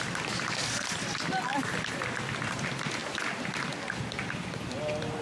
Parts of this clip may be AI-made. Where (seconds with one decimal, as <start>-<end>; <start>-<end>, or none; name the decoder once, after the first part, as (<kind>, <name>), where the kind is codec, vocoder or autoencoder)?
1.5-2.0 (vocoder, BigVGAN v2)